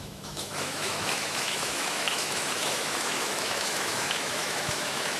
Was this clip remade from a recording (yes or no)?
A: yes